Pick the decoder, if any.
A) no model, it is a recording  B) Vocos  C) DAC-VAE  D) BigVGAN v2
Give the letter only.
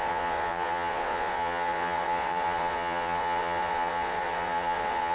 B